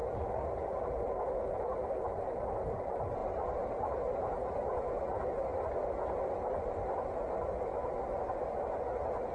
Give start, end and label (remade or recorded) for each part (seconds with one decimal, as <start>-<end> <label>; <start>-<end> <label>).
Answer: 0.0-9.3 recorded